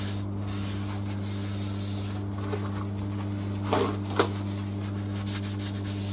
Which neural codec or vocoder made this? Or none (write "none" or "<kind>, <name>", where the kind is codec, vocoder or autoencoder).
none